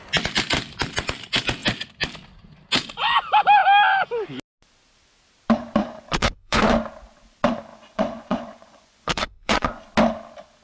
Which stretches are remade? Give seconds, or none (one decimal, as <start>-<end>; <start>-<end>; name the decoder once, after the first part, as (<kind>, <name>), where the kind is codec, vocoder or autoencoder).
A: 5.8-6.7 (vocoder, Vocos); 7.7-9.8